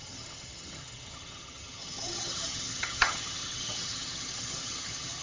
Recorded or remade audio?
remade